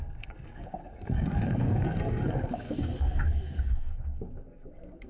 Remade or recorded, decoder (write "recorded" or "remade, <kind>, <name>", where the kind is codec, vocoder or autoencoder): remade, codec, SNAC